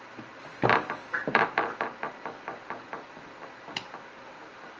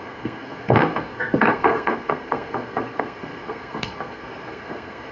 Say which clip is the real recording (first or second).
first